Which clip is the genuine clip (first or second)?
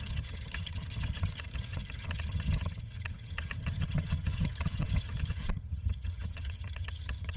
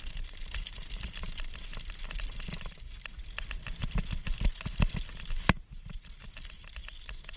second